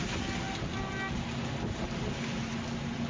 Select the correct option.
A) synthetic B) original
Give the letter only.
B